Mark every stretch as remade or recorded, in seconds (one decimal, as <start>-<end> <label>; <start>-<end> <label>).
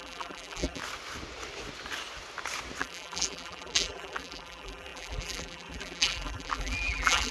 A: 0.0-0.8 remade; 0.8-2.8 recorded; 2.8-7.3 remade